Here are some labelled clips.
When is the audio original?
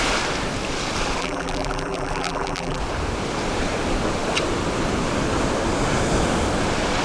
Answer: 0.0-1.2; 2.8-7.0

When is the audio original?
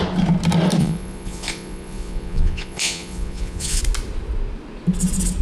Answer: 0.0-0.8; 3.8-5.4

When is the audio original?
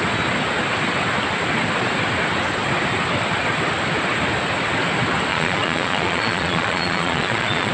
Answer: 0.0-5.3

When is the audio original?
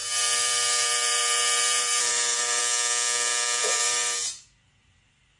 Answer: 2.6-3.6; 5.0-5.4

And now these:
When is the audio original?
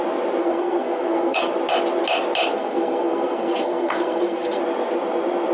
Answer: 0.0-0.4; 1.5-2.5; 4.6-5.5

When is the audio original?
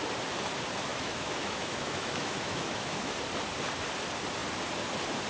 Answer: 0.0-0.9; 3.1-5.3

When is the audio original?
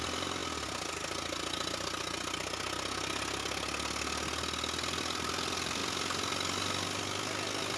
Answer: 0.4-5.0; 5.8-7.8